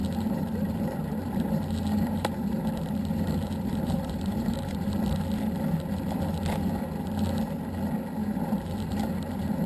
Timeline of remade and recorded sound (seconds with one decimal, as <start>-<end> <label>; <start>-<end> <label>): 0.0-4.9 remade; 4.9-8.2 recorded; 8.2-9.7 remade